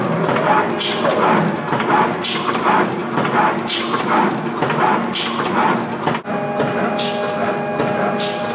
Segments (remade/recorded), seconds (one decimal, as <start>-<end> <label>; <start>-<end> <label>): 0.0-8.5 recorded